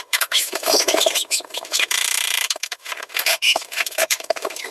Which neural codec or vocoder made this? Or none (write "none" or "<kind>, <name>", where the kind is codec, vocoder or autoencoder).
autoencoder, DAC-VAE